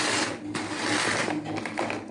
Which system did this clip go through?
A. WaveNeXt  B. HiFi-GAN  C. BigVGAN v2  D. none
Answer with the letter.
D